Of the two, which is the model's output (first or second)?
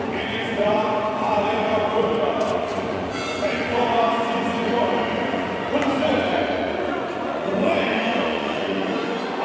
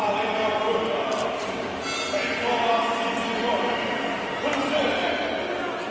first